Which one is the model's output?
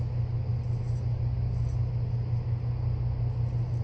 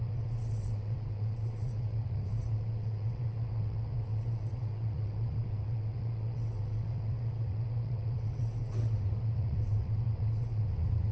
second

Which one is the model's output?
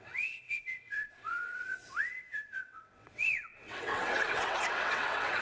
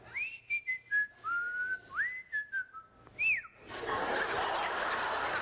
first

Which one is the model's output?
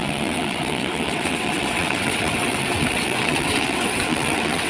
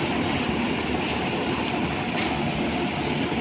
first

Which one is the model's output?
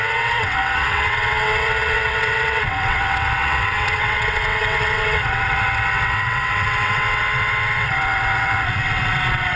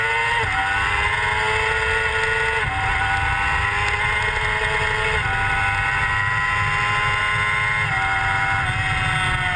first